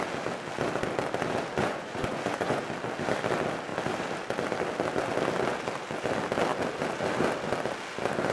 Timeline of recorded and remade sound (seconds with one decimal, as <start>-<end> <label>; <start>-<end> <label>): 0.0-1.6 recorded; 1.6-2.6 remade; 2.6-8.3 recorded